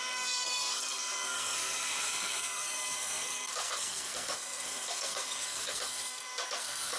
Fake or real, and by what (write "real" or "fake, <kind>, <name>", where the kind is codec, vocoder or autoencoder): fake, codec, SNAC